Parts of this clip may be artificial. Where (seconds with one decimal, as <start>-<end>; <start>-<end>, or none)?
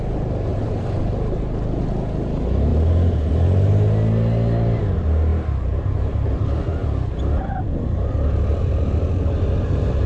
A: 0.5-1.0